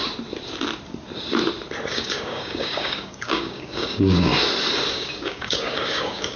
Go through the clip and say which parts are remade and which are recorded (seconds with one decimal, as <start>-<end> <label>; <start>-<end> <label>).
0.0-1.9 recorded; 1.9-4.3 remade; 4.3-4.9 recorded; 4.9-6.4 remade